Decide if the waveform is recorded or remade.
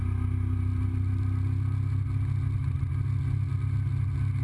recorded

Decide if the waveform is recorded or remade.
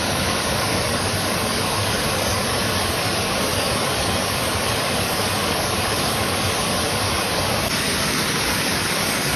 remade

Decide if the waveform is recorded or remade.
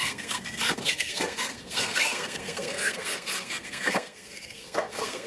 remade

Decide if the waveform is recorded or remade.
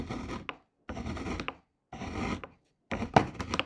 recorded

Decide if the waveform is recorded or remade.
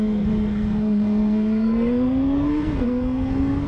remade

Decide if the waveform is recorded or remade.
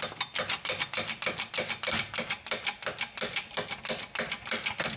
recorded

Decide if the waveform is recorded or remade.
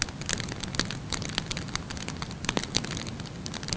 recorded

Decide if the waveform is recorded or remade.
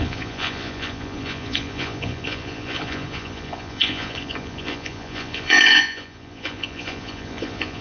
remade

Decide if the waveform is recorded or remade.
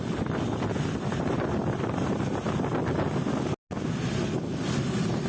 recorded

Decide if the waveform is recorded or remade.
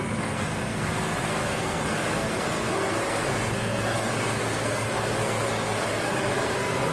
remade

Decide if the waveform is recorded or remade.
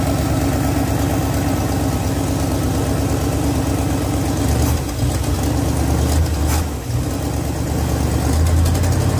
recorded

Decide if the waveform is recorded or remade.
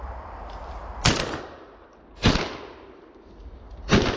recorded